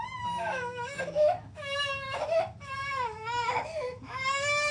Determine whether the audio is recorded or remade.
remade